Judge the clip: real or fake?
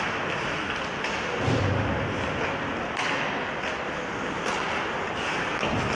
real